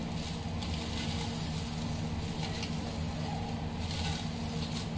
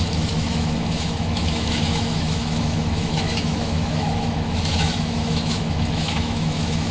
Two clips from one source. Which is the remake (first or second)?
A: second